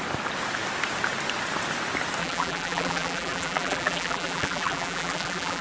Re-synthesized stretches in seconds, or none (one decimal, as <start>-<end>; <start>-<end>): 2.2-5.6